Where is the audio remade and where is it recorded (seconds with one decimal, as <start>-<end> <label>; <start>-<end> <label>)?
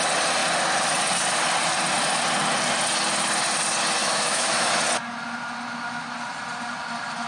0.0-4.0 recorded; 4.0-4.8 remade; 4.8-7.3 recorded